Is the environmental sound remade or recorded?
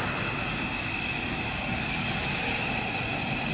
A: recorded